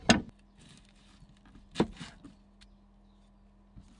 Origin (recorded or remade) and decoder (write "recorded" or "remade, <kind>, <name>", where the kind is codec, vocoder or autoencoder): recorded